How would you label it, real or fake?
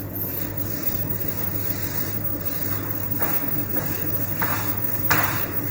fake